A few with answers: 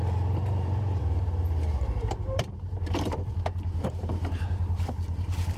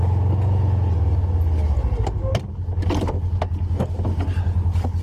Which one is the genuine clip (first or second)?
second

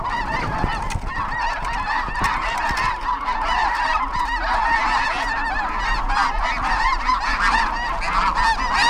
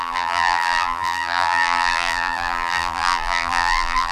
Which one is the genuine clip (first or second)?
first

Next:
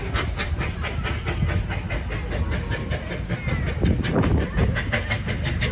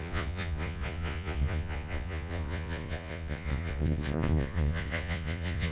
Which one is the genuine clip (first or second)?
first